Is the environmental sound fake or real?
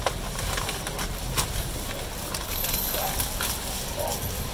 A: real